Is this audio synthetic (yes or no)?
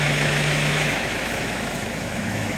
yes